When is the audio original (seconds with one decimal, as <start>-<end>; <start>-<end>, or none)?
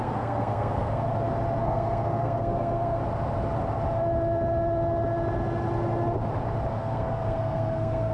1.1-1.6; 3.0-6.7